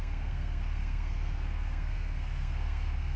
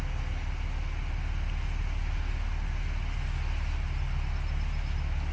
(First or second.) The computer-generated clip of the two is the first